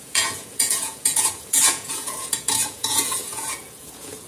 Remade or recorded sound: remade